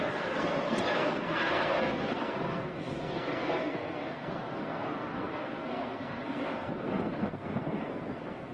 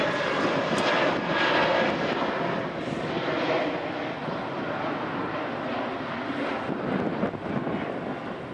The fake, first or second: first